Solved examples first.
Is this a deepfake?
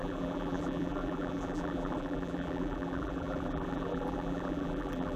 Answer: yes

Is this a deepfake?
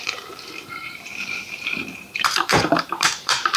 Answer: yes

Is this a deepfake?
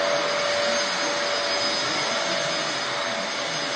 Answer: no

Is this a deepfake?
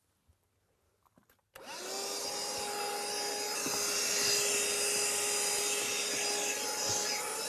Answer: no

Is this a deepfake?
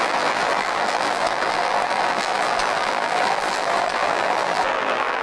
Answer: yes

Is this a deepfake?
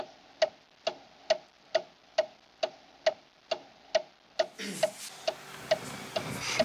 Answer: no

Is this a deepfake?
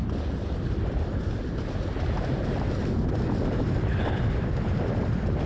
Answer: no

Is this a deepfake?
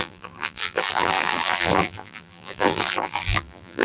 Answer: yes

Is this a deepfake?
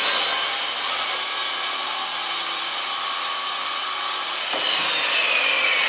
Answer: no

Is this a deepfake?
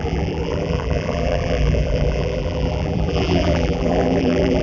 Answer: yes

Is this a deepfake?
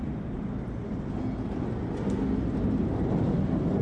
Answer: no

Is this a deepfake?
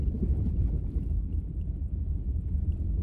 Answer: no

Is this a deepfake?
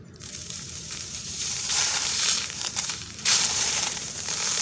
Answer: yes